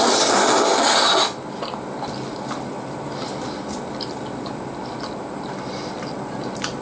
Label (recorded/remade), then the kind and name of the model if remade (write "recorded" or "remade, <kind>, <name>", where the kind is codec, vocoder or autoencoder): recorded